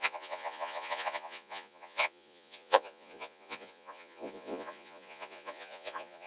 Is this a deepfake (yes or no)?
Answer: yes